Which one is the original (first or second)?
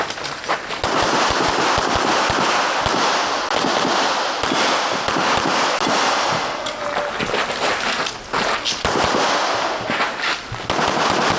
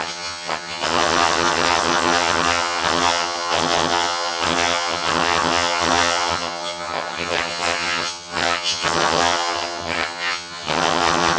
first